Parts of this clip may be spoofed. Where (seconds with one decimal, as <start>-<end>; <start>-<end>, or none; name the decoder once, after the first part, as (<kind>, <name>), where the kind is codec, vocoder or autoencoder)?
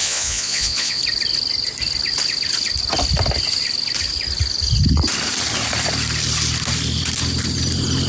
0.0-1.0 (vocoder, Vocos)